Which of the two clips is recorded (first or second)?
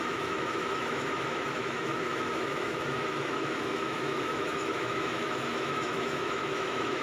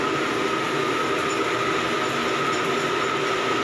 second